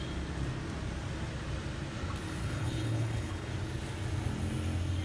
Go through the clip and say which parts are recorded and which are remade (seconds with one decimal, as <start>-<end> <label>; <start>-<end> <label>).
0.0-2.4 recorded; 2.4-3.5 remade; 3.5-5.0 recorded